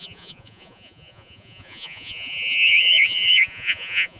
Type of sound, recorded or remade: remade